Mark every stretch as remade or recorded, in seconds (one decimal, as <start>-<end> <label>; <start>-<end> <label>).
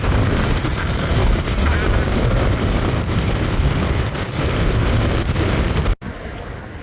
0.0-6.8 recorded